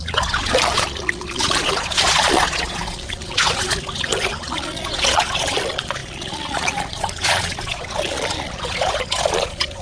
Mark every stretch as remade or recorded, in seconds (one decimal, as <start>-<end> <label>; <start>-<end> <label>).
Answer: 0.0-9.8 remade